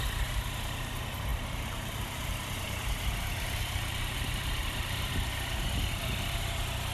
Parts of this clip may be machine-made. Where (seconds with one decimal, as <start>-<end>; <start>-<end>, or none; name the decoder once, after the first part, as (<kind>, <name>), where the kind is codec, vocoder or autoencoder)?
1.3-5.1 (vocoder, BigVGAN v2)

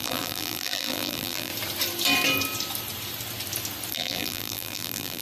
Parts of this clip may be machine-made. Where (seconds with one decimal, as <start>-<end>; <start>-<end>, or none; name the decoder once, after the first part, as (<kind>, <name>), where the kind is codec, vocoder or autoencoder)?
0.0-1.5 (vocoder, BigVGAN v2); 3.9-5.2

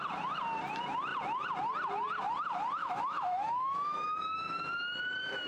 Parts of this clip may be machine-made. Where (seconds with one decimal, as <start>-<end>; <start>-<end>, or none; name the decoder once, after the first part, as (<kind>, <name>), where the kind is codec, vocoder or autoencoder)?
2.8-4.6 (autoencoder, DAC-VAE)